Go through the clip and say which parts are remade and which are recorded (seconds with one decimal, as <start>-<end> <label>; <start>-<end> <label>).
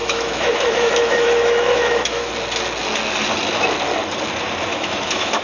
0.0-2.3 remade; 2.3-4.7 recorded; 4.7-5.4 remade